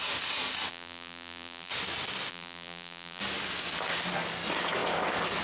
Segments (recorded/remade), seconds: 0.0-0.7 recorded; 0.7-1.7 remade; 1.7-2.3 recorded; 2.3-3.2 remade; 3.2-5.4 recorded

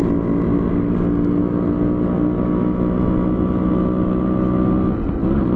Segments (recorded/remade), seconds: 0.0-5.6 recorded

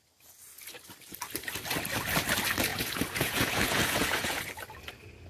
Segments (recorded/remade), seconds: 0.0-2.7 recorded; 2.7-4.5 remade; 4.5-5.3 recorded

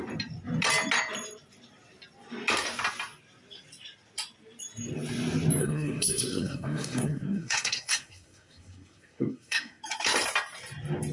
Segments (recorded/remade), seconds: 0.0-5.6 recorded; 5.6-9.8 remade; 9.8-11.1 recorded